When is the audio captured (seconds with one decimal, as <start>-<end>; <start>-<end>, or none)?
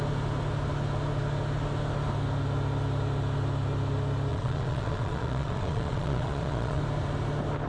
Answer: 0.0-4.3; 6.8-7.7